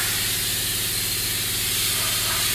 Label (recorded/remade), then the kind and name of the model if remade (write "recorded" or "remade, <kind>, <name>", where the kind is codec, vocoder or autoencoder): recorded